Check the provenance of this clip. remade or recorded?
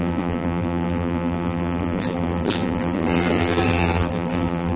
remade